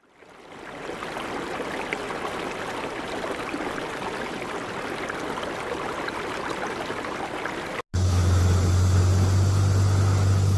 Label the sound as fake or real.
real